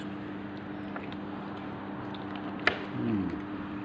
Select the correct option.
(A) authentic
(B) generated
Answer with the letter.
A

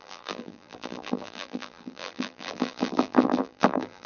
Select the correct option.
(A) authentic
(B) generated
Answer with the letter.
B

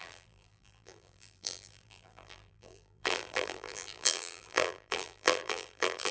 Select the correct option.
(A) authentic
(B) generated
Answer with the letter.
B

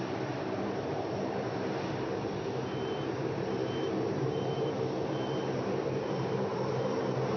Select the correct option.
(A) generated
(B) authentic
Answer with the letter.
A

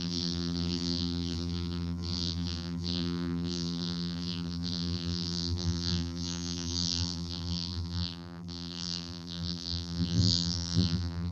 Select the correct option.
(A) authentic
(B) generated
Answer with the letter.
B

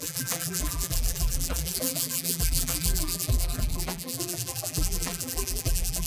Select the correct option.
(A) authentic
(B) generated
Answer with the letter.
B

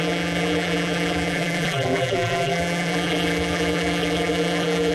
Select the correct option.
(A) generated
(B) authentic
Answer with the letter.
A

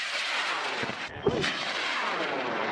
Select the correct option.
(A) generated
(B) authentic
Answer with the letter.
A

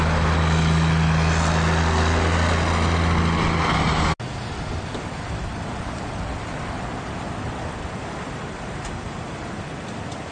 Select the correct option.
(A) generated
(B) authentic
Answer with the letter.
B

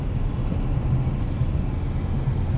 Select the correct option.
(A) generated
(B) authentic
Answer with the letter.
B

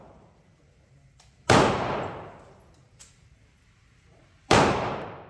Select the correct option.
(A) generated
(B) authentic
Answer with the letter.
A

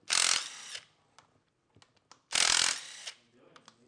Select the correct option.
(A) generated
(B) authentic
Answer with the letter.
B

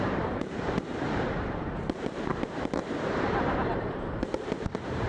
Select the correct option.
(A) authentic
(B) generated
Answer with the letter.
B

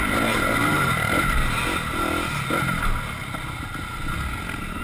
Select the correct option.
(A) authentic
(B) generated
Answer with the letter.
A